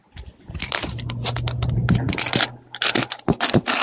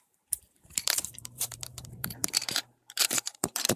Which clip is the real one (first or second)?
first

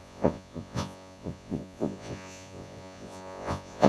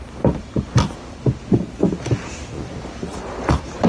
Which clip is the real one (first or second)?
second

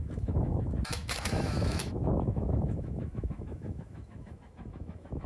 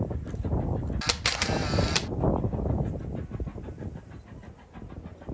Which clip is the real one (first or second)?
second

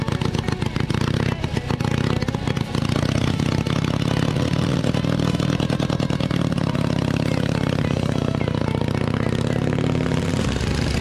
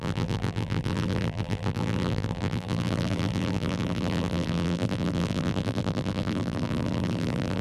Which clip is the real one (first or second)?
first